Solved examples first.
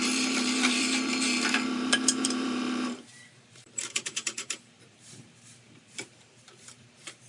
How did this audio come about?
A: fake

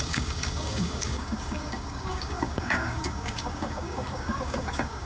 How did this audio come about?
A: fake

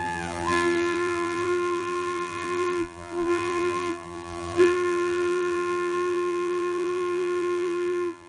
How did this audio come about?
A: fake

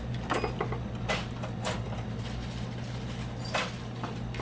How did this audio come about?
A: real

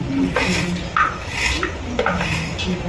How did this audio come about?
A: real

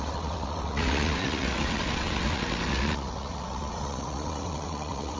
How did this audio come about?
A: fake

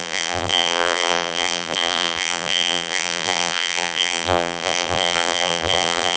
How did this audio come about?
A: fake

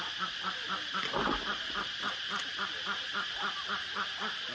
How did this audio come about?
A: real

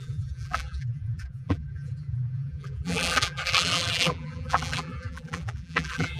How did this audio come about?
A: fake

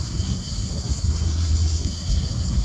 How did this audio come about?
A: fake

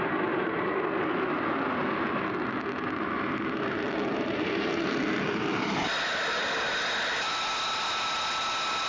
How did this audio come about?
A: real